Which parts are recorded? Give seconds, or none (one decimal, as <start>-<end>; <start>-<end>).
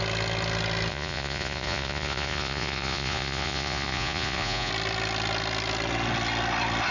0.0-0.9; 4.7-6.9